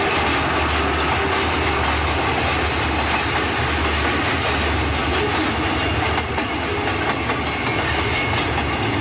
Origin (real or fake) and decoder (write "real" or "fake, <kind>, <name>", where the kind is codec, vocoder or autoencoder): real